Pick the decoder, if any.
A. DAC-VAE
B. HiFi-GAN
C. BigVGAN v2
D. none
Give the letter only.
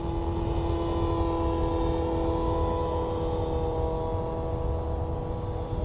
D